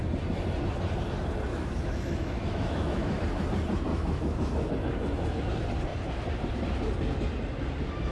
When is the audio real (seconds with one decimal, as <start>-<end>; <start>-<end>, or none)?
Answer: 0.0-1.5; 3.2-3.9; 4.7-8.1